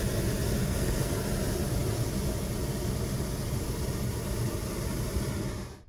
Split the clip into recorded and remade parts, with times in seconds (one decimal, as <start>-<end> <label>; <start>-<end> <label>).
0.0-0.6 recorded; 0.6-1.2 remade; 1.2-5.9 recorded